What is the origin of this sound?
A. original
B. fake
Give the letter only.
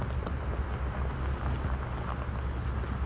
A